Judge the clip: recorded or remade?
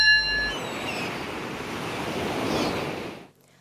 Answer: recorded